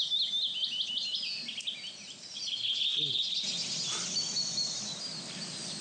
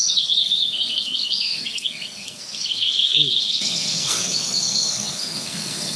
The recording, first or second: first